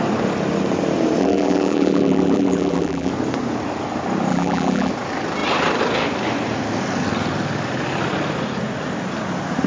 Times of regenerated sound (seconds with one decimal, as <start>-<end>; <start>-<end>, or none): 1.2-3.1; 4.3-4.9